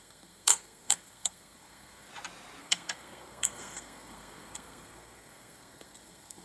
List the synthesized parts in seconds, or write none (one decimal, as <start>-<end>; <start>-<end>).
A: 0.0-2.1; 2.6-6.4